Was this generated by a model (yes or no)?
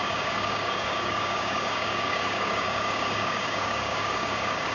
yes